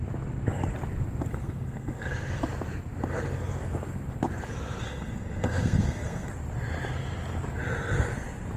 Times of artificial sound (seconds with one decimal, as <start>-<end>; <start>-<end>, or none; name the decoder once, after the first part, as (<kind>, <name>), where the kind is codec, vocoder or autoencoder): 1.3-2.4 (codec, SNAC); 4.8-6.3